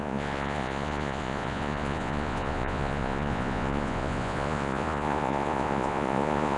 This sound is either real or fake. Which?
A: fake